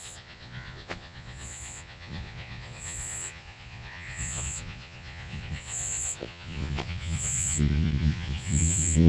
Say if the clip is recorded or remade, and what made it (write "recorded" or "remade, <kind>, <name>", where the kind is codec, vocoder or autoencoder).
remade, vocoder, Vocos